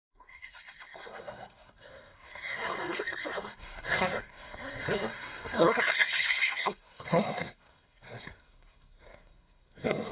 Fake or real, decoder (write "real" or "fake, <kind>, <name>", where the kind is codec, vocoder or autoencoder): fake, codec, SNAC